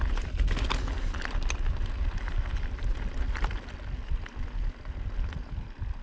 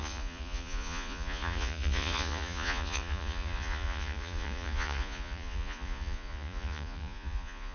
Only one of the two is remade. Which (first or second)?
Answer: second